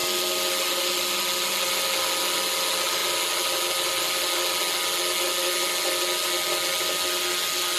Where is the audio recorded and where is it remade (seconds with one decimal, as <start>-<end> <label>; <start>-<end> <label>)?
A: 0.0-7.8 recorded